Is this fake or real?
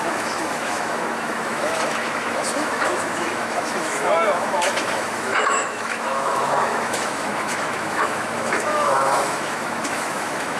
fake